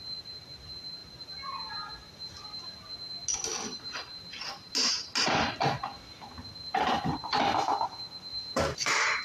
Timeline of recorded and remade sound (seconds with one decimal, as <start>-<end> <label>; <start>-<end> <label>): 0.0-8.3 recorded; 8.3-9.2 remade